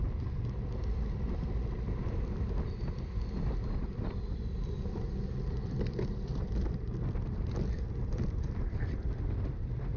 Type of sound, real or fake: fake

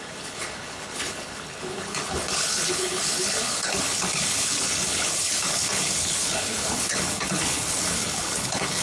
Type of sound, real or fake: fake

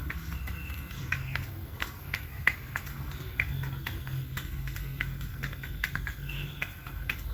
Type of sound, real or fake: fake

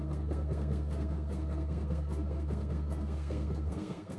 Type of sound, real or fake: fake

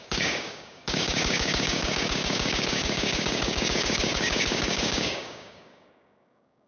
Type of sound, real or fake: fake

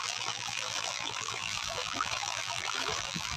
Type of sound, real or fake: fake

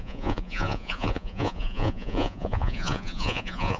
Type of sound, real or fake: fake